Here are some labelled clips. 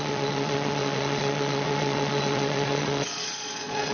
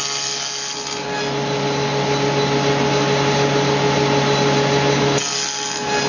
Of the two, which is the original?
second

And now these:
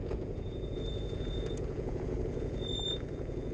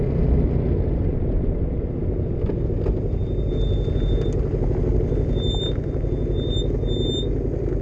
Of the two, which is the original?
second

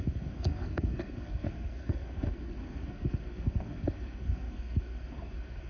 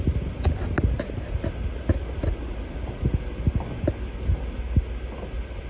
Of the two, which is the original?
second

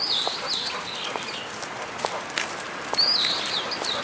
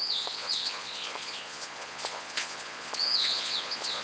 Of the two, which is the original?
first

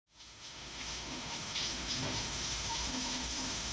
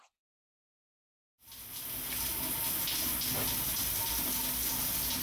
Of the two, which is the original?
second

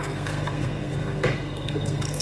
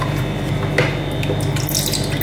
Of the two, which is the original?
second